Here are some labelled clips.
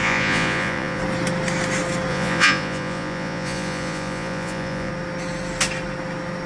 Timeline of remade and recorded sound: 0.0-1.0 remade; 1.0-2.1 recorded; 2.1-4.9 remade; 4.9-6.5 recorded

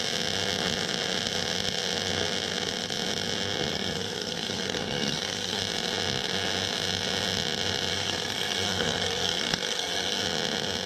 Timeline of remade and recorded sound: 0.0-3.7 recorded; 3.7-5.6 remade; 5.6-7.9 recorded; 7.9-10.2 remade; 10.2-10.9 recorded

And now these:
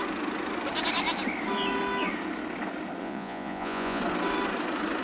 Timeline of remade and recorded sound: 0.0-3.0 recorded; 3.0-4.0 remade; 4.0-5.0 recorded

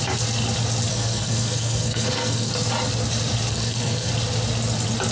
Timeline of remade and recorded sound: 0.0-0.9 recorded; 0.9-2.5 remade; 2.5-3.5 recorded; 3.5-4.1 remade; 4.1-5.1 recorded

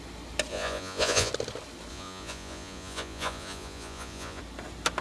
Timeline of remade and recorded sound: 0.0-0.5 recorded; 0.5-1.3 remade; 1.3-1.9 recorded; 1.9-4.4 remade; 4.4-5.0 recorded